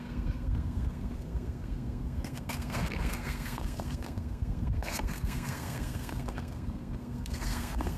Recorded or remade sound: remade